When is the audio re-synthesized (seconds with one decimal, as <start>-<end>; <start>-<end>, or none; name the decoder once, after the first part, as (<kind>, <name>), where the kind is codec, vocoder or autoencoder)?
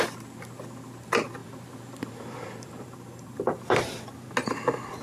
1.4-4.3 (vocoder, BigVGAN v2)